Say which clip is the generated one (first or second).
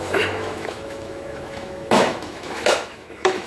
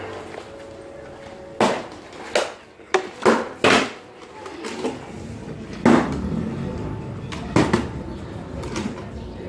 first